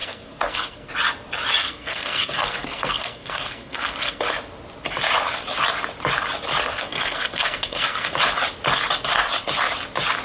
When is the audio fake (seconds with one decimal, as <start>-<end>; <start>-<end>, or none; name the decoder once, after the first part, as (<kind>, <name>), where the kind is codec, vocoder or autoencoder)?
0.0-0.9 (codec, SNAC); 1.6-4.2; 6.7-8.1